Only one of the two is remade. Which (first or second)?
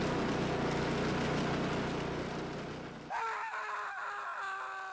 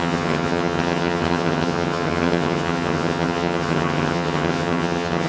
second